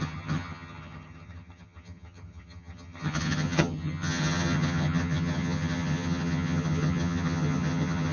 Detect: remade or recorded remade